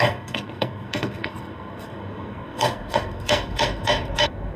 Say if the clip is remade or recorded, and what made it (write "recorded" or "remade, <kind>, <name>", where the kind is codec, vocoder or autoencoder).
remade, codec, SNAC